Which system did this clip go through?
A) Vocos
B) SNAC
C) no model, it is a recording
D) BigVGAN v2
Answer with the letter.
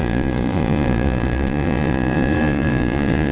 A